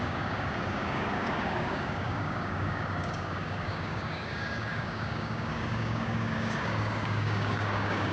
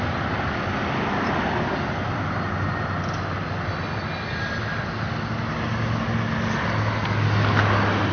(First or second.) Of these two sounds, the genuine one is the second